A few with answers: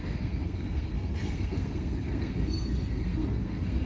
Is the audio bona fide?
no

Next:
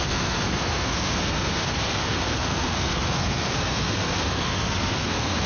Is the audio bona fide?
no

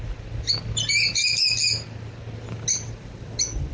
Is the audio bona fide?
yes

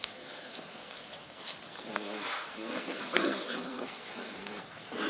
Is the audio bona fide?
no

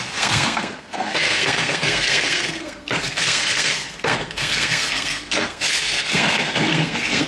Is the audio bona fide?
no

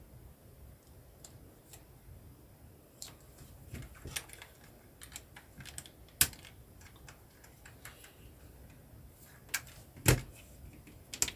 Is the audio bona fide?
yes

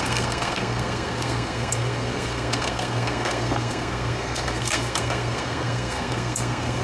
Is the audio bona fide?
no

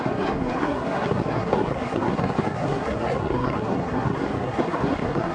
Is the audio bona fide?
no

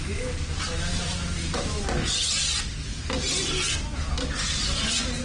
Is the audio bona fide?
yes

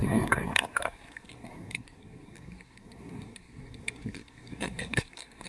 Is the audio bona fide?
no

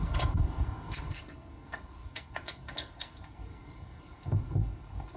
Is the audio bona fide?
no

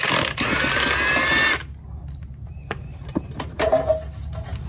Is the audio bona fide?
yes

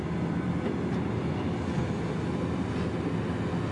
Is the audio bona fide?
yes